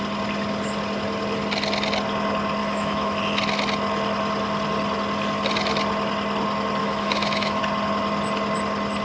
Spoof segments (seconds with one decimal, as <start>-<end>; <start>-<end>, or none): 2.6-3.2; 6.8-7.6

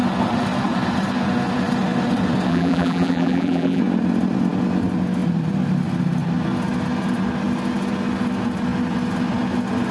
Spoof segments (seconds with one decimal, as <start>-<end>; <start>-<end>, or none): 2.5-3.8

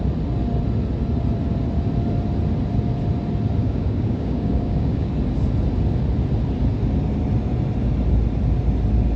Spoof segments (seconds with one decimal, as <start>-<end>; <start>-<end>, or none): 3.6-5.1

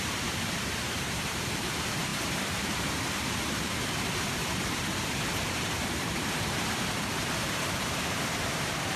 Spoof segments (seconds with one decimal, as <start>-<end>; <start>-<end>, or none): 0.0-9.0

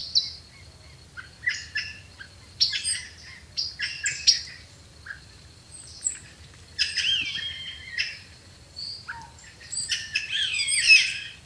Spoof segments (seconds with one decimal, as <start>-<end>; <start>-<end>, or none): 5.2-11.5

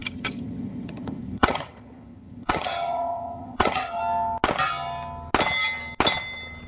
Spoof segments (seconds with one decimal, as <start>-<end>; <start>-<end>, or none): 0.0-4.0

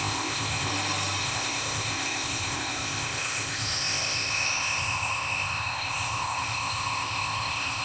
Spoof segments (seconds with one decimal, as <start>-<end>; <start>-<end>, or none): 0.0-0.7; 1.2-7.8